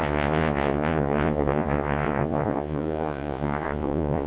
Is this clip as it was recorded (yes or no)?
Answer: no